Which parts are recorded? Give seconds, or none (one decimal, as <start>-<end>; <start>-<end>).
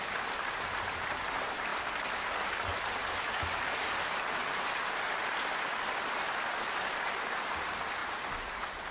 0.0-8.9